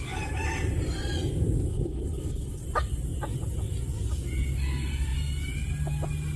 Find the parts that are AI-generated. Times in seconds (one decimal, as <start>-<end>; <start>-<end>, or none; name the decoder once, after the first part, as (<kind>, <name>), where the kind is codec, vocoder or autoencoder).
1.7-2.6 (codec, HILCodec)

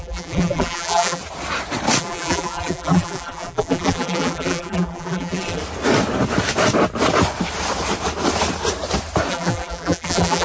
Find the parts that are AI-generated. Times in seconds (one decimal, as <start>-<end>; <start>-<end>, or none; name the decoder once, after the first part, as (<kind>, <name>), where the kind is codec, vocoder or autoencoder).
0.0-1.2 (vocoder, BigVGAN v2); 2.0-5.6; 9.3-10.4